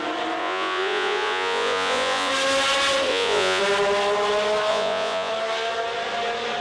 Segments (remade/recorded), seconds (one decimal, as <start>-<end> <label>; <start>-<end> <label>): 0.0-0.4 recorded; 0.4-2.3 remade; 2.3-3.1 recorded; 3.1-3.6 remade; 3.6-4.7 recorded; 4.7-5.3 remade; 5.3-6.6 recorded